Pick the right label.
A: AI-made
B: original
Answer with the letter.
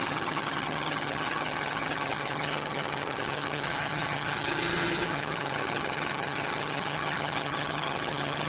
A